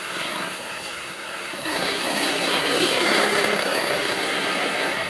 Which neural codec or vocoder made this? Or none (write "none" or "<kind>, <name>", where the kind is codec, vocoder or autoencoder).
codec, SNAC